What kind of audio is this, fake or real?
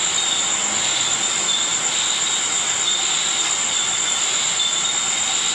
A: real